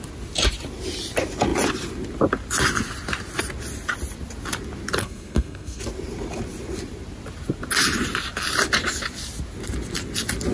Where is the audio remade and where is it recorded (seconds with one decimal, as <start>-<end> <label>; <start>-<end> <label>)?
0.0-5.0 recorded; 5.0-5.8 remade; 5.8-10.5 recorded